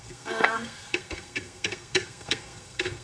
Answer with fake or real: fake